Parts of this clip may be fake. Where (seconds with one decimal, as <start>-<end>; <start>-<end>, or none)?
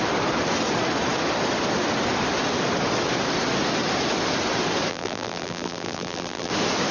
4.9-6.5